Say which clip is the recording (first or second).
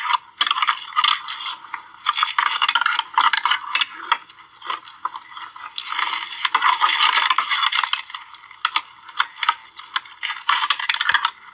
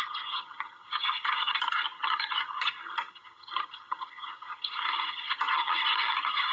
first